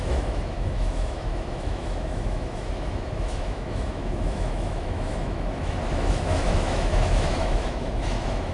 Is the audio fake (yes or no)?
yes